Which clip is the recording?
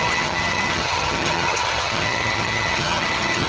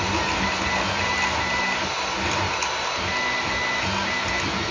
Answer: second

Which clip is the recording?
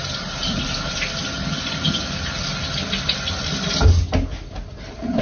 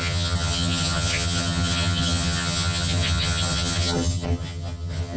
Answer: first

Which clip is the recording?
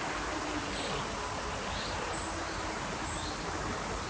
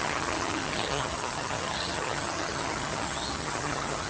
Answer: first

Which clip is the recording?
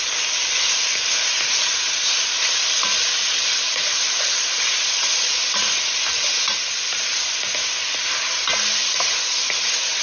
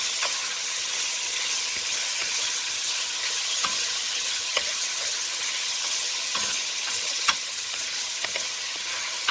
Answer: first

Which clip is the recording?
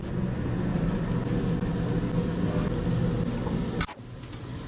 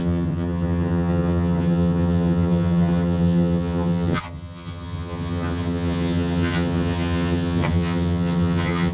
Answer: first